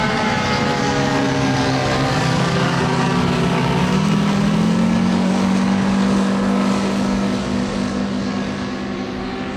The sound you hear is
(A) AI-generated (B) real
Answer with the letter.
A